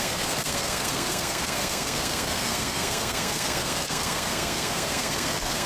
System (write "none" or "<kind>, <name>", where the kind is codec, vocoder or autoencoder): codec, SNAC